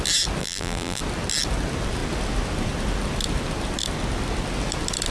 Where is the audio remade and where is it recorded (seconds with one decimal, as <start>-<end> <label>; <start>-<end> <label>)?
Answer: 0.0-0.4 recorded; 0.4-1.0 remade; 1.0-5.1 recorded